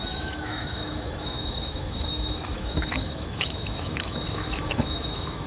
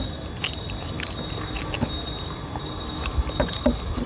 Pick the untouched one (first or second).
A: second